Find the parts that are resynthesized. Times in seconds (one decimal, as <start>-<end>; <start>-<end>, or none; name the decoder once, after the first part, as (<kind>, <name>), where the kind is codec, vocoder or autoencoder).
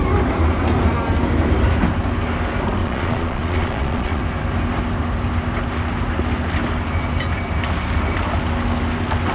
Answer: 2.8-4.2 (vocoder, Vocos)